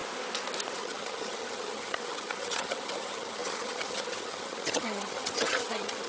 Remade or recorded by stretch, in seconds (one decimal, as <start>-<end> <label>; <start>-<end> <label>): 0.0-0.8 recorded; 0.8-6.1 remade